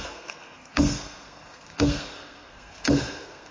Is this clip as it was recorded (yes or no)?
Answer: no